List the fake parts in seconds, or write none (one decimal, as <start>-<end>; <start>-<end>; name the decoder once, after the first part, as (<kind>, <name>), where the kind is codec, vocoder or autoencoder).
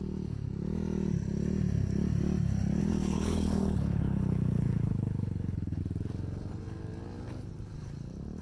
2.8-5.8 (codec, HILCodec)